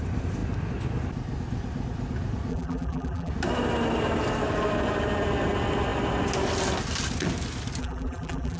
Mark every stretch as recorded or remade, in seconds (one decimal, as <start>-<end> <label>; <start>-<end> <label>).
0.0-2.5 recorded; 2.5-3.3 remade; 3.3-7.8 recorded; 7.8-8.6 remade